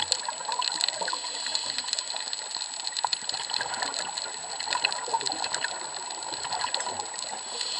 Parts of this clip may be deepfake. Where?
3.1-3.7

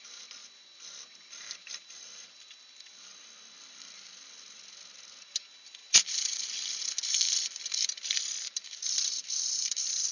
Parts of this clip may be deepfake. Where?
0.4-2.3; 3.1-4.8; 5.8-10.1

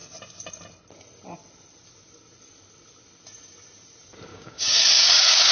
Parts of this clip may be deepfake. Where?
4.3-5.5

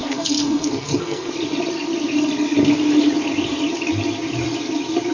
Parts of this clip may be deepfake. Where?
0.0-1.3

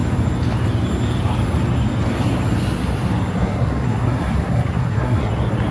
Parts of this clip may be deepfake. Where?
3.3-5.3

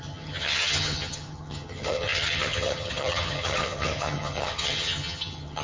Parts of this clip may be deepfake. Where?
0.0-5.6